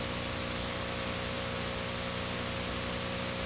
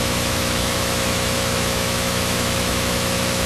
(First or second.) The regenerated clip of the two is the second